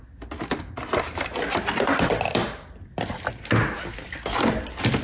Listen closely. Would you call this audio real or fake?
real